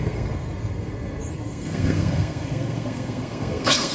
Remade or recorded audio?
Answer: remade